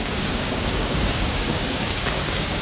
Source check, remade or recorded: remade